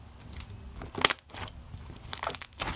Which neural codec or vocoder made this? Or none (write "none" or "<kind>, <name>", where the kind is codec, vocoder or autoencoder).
none